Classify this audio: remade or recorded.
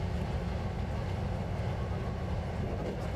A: recorded